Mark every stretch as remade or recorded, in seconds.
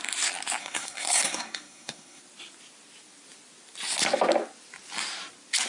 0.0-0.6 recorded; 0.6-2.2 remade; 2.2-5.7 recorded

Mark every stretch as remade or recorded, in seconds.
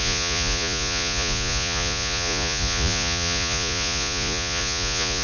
0.0-5.2 remade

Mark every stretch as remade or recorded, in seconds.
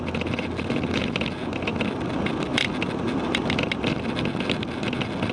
0.0-5.3 recorded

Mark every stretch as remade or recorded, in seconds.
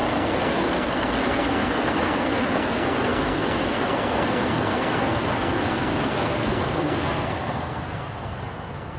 0.0-9.0 remade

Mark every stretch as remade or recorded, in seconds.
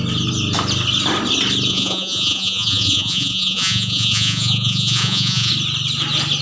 0.0-1.7 recorded; 1.7-5.5 remade; 5.5-6.4 recorded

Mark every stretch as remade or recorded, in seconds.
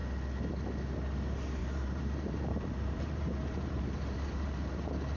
0.0-1.6 recorded; 1.6-4.7 remade; 4.7-5.2 recorded